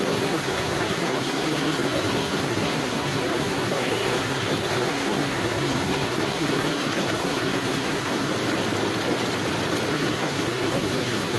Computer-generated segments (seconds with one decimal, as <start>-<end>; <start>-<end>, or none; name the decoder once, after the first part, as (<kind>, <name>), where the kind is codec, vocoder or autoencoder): 0.0-8.3 (codec, SNAC); 9.9-11.4